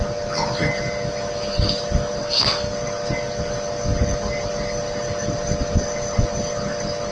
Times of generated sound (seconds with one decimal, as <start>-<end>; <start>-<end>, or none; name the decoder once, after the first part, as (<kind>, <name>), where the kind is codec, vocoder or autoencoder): 2.2-2.7 (codec, SNAC)